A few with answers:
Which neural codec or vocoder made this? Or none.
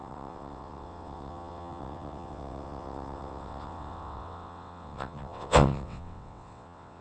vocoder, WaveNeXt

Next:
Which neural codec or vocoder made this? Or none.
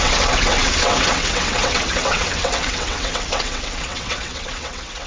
vocoder, WaveNeXt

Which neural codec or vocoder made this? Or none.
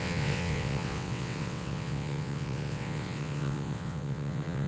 vocoder, WaveNeXt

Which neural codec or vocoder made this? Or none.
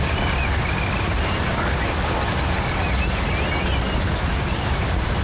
none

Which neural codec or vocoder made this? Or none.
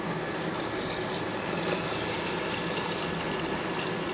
none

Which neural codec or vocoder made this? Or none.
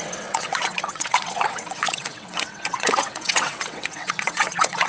vocoder, WaveNeXt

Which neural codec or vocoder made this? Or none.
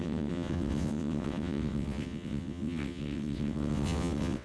vocoder, WaveNeXt